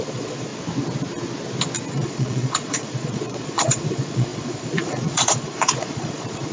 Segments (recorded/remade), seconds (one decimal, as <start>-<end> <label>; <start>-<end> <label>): 0.0-0.5 remade; 0.5-1.9 recorded; 1.9-6.5 remade

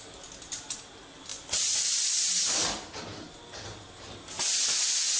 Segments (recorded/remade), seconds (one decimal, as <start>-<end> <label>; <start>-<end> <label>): 0.0-5.2 recorded

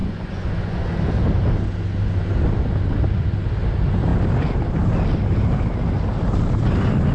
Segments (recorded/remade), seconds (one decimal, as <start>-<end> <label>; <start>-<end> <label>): 0.0-0.9 remade; 0.9-7.1 recorded

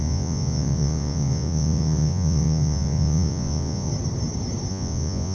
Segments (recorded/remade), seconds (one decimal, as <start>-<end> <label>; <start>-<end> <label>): 0.0-3.9 remade; 3.9-4.7 recorded; 4.7-5.3 remade

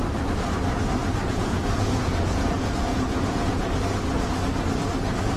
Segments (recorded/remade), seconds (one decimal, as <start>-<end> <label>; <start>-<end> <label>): 0.0-1.0 recorded; 1.0-3.7 remade; 3.7-5.4 recorded

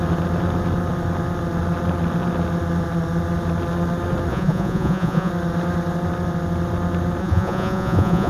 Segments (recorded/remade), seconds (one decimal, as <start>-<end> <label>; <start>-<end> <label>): 0.0-4.3 recorded; 4.3-5.3 remade; 5.3-7.2 recorded; 7.2-8.3 remade